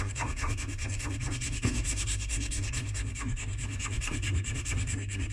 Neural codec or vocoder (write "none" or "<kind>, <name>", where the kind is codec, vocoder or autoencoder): codec, SNAC